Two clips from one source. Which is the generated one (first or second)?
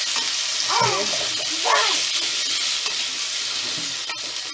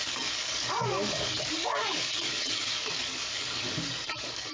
second